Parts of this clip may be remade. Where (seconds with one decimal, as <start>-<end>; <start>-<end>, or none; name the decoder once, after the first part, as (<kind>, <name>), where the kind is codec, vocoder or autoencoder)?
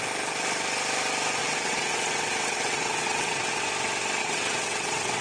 1.4-3.6 (vocoder, WaveNeXt); 4.2-5.2